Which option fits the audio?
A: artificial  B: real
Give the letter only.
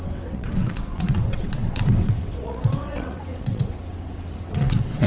A